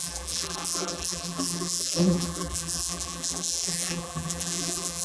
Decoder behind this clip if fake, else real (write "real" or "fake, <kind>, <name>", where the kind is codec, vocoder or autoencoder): fake, vocoder, BigVGAN v2